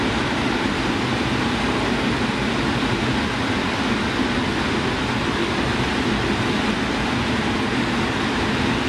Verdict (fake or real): real